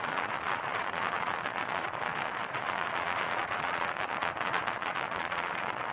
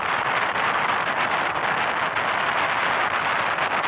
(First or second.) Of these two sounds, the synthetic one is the first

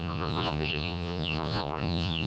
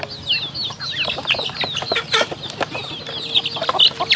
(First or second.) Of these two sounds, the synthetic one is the first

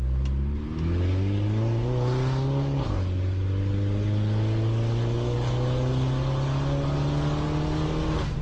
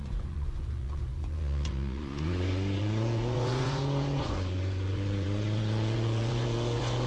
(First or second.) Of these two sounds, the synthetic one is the second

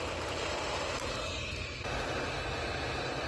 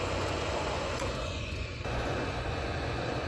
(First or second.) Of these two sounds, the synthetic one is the second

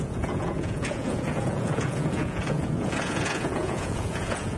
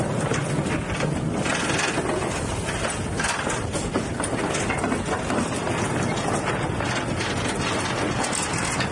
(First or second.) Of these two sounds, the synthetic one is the first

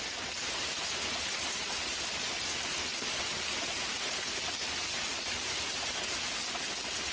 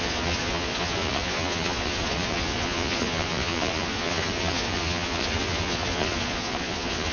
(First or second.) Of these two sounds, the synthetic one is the second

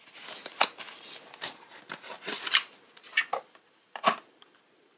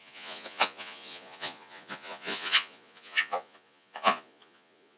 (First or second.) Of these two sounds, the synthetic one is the second